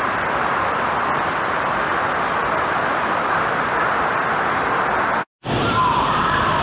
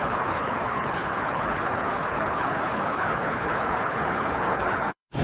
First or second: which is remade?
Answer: second